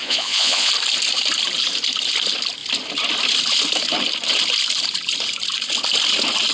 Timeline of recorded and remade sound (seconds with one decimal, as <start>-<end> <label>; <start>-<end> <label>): 0.0-0.7 remade; 0.7-6.5 recorded